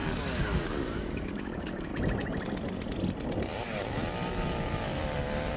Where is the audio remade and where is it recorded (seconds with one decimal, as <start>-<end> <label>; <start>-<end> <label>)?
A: 0.0-1.9 remade; 1.9-5.6 recorded